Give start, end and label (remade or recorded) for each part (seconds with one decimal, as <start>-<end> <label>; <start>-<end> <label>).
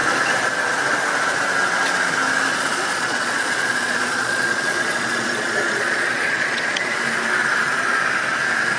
0.0-2.5 recorded; 2.5-6.8 remade; 6.8-8.8 recorded